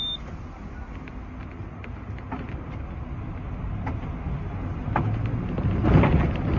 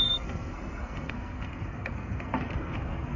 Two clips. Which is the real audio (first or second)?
first